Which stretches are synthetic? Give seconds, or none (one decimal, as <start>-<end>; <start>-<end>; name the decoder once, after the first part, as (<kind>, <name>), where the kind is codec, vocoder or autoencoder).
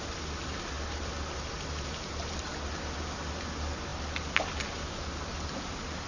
none